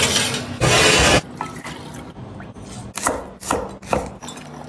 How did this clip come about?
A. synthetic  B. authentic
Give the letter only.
B